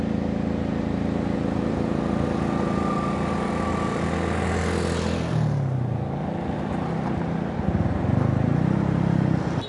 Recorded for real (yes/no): yes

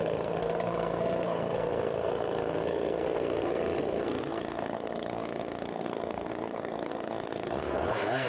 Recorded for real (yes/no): no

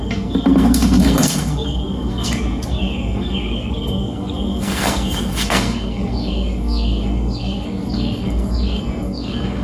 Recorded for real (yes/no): no